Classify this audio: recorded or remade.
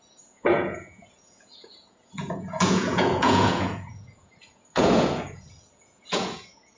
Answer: remade